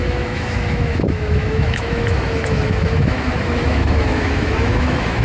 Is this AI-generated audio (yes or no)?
yes